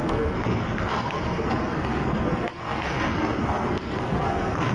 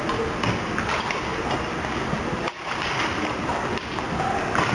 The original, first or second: second